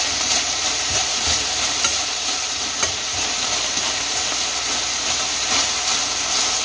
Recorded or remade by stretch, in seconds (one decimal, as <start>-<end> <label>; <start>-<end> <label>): 0.0-4.3 remade; 4.3-5.1 recorded; 5.1-5.9 remade; 5.9-6.6 recorded